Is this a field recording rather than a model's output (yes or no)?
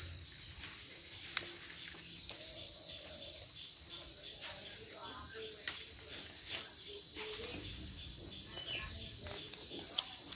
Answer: yes